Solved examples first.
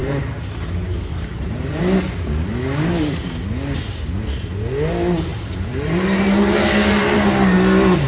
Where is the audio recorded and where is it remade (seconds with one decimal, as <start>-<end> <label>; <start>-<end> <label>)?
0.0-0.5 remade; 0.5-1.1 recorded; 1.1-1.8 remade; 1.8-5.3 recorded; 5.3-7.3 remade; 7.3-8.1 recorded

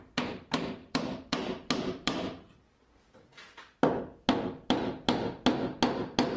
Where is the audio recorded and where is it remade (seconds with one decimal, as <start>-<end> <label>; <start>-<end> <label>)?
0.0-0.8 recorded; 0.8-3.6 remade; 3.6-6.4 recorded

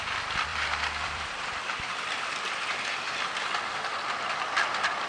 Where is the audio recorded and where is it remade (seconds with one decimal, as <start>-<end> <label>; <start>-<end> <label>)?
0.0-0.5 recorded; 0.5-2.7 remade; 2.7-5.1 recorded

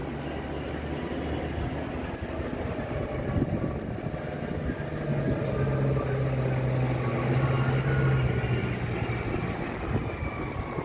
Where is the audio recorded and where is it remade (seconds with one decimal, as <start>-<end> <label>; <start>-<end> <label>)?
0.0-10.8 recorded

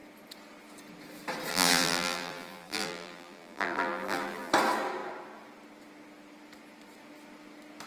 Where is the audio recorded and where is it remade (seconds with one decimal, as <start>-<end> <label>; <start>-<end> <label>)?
0.0-1.5 recorded; 1.5-4.5 remade; 4.5-7.9 recorded

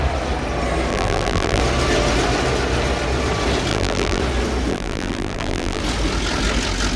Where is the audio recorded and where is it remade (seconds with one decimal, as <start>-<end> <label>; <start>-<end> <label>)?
0.0-0.9 recorded; 0.9-1.6 remade; 1.6-3.7 recorded; 3.7-4.2 remade; 4.2-4.7 recorded; 4.7-5.8 remade; 5.8-7.0 recorded

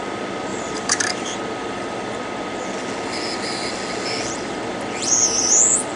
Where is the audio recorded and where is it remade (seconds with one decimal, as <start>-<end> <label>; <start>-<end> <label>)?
0.0-0.5 recorded; 0.5-1.4 remade; 1.4-6.0 recorded

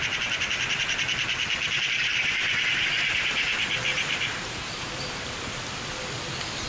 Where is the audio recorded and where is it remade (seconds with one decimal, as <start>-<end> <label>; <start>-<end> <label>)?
0.0-3.9 recorded; 3.9-5.8 remade; 5.8-6.7 recorded